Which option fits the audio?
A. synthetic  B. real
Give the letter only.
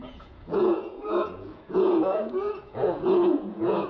A